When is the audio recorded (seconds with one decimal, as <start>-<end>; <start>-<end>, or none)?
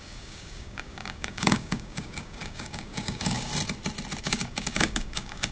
3.5-4.2